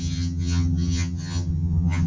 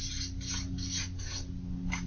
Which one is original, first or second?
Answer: second